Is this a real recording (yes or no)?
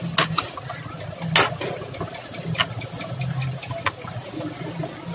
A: yes